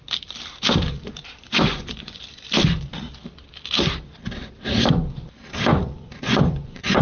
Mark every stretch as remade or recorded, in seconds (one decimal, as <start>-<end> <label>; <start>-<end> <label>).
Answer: 0.0-1.4 recorded; 1.4-2.2 remade; 2.2-5.7 recorded; 5.7-7.0 remade